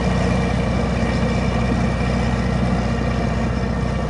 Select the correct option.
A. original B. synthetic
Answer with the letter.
A